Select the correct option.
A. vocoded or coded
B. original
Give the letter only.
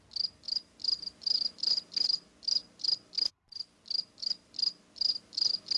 B